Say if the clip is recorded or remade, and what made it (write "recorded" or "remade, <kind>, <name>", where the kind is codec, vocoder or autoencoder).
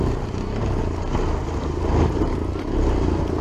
recorded